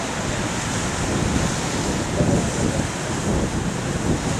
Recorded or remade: recorded